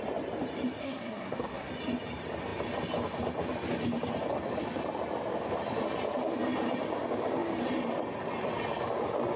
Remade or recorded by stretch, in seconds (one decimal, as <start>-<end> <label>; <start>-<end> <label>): 0.0-0.8 recorded; 0.8-1.7 remade; 1.7-9.4 recorded